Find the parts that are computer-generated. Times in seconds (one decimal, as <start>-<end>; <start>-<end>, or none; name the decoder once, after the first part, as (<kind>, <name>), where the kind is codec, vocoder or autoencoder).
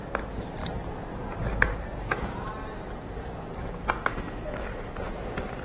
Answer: 0.6-3.8 (vocoder, BigVGAN v2); 4.7-5.6